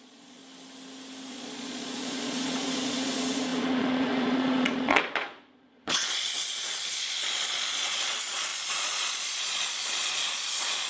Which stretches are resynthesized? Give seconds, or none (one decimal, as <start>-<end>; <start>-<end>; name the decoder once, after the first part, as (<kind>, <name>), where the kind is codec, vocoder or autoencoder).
0.0-0.4 (vocoder, Vocos); 1.3-10.9